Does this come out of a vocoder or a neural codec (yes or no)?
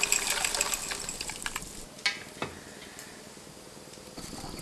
no